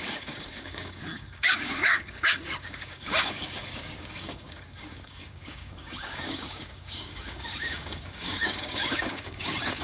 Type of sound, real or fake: fake